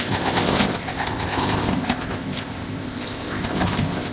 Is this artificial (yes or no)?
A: yes